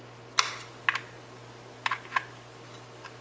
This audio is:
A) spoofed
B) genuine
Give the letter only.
B